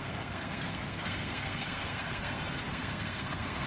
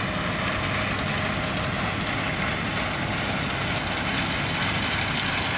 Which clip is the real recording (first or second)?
second